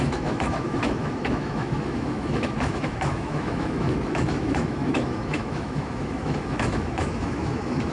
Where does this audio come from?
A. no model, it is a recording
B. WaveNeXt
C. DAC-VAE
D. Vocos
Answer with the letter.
C